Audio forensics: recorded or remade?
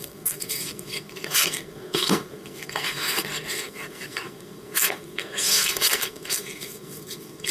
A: remade